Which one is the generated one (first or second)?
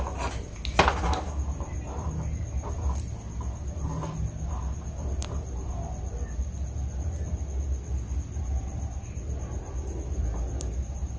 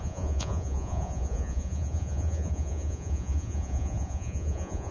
second